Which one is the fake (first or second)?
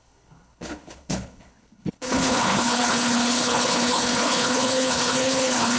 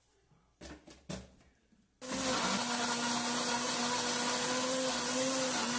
first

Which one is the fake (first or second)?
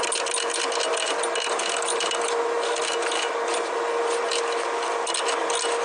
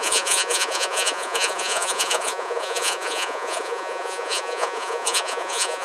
second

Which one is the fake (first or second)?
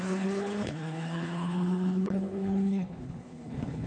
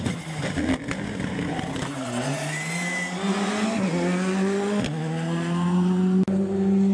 first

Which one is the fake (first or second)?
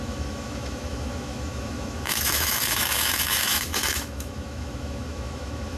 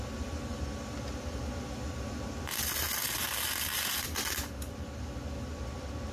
first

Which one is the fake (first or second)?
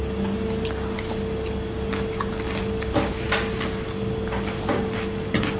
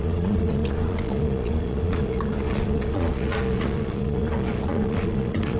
second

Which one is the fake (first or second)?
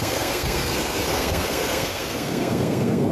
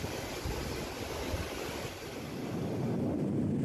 first